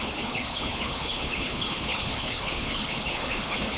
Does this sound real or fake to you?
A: fake